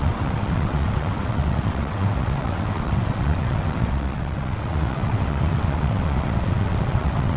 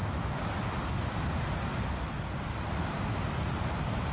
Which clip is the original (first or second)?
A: second